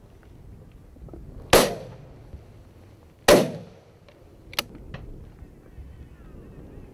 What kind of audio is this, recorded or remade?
recorded